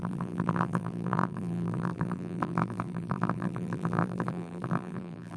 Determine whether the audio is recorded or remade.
remade